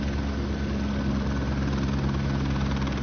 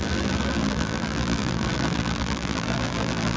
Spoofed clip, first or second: second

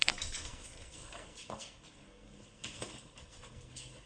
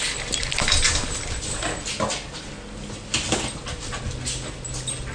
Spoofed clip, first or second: first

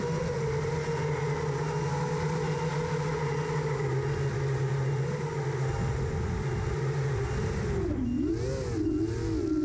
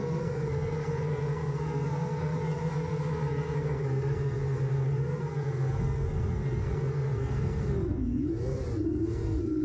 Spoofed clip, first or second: second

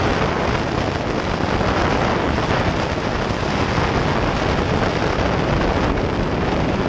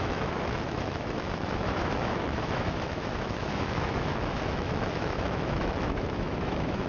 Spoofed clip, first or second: second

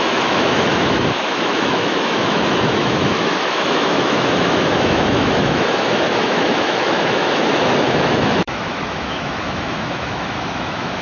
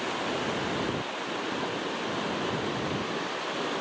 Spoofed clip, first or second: first